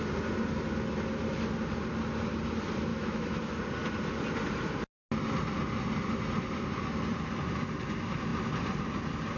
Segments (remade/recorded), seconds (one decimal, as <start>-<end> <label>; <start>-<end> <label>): 0.0-2.9 recorded; 2.9-3.4 remade; 3.4-9.4 recorded